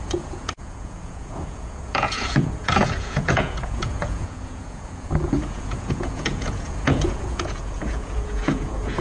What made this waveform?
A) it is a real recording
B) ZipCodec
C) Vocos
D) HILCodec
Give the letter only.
C